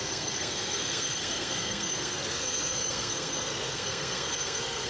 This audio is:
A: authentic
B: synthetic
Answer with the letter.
B